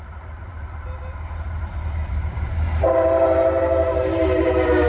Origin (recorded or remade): remade